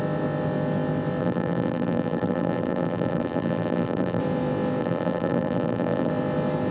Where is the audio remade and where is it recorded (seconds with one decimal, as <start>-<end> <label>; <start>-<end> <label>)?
0.0-1.2 recorded; 1.2-4.2 remade; 4.2-4.8 recorded; 4.8-6.1 remade; 6.1-6.7 recorded

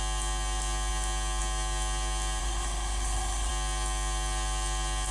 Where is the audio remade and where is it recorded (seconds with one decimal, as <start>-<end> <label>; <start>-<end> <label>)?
0.0-2.4 recorded; 2.4-3.5 remade; 3.5-5.1 recorded